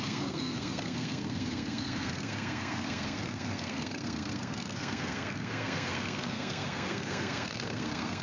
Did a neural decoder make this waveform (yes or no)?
yes